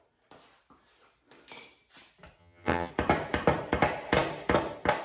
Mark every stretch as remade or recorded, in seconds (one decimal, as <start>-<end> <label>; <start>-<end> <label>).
0.0-2.4 recorded; 2.4-2.9 remade; 2.9-5.0 recorded